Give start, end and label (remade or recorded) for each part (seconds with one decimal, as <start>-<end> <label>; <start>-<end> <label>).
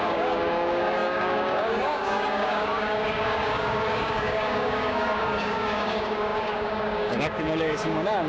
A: 0.0-8.3 remade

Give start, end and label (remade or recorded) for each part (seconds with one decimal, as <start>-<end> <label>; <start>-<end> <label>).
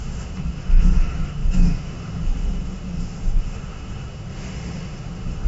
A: 0.0-5.5 remade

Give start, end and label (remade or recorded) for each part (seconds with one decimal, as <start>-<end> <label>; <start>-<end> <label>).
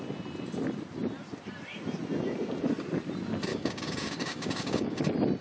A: 0.0-3.5 recorded; 3.5-5.0 remade; 5.0-5.4 recorded